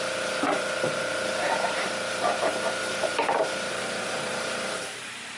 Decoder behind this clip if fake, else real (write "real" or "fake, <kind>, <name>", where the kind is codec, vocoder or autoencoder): fake, vocoder, BigVGAN v2